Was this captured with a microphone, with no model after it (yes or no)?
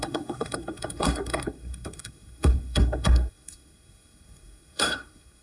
no